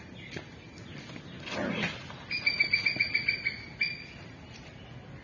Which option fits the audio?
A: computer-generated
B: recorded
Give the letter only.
B